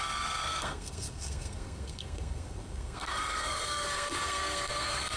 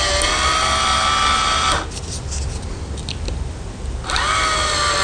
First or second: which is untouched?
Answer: second